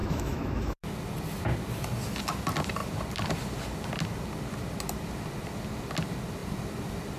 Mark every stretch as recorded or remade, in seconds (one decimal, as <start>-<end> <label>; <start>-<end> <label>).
0.0-0.9 remade; 0.9-7.2 recorded